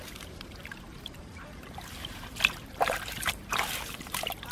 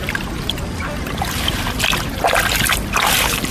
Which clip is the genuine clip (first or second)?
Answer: second